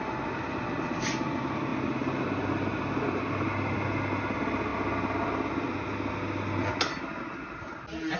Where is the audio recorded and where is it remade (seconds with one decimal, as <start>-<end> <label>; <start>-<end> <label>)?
0.0-8.2 recorded